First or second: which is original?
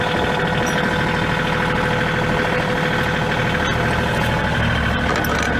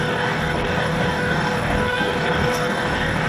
first